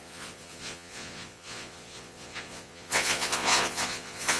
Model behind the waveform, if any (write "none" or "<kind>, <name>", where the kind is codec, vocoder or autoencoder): vocoder, Vocos